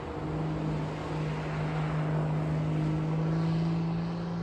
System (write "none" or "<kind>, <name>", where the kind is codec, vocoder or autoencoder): none